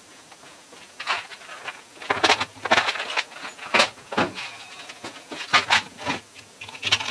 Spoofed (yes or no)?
no